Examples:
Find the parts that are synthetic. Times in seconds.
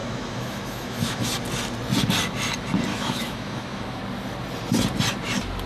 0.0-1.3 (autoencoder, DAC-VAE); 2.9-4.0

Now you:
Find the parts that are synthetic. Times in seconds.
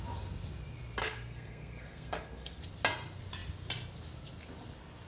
1.0-2.6 (codec, SNAC)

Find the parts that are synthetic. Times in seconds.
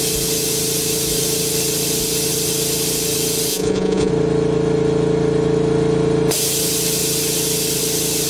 3.5-4.1 (vocoder, Vocos)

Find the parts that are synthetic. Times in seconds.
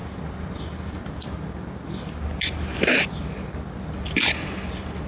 none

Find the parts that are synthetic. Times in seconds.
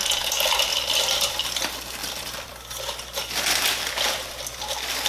0.7-1.3 (vocoder, BigVGAN v2); 2.0-4.4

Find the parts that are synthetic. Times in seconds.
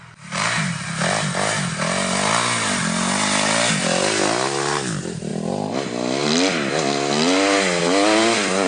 none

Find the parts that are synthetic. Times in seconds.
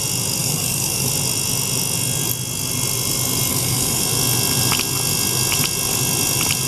0.4-1.1 (codec, DAC); 3.5-4.0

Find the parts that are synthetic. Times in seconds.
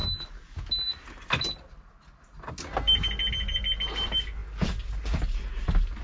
none